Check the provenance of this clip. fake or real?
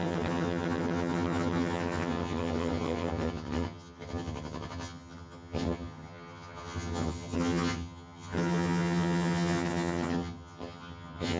fake